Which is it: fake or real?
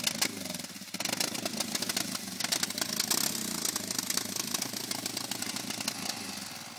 real